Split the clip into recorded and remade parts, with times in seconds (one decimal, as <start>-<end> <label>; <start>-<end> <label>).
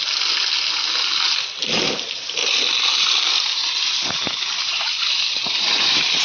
0.0-1.8 recorded; 1.8-2.4 remade; 2.4-3.0 recorded; 3.0-6.2 remade